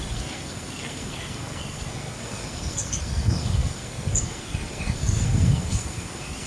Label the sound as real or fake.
fake